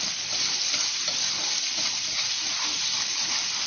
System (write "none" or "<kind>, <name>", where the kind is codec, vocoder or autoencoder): none